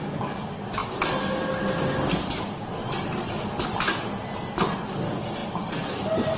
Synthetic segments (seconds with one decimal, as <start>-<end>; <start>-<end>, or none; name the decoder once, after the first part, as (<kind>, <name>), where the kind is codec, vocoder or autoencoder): 2.8-3.8 (vocoder, BigVGAN v2); 5.4-5.9